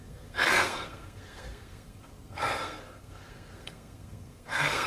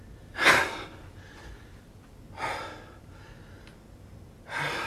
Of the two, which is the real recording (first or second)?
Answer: second